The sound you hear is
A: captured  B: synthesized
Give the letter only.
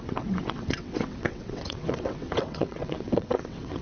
B